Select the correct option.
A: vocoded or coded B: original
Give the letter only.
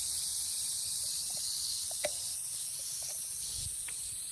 B